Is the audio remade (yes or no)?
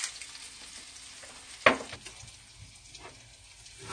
no